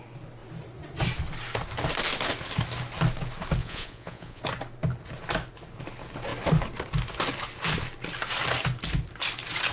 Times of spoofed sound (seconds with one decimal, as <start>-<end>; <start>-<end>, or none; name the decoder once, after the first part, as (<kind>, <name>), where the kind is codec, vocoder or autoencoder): 3.6-4.4 (vocoder, Vocos)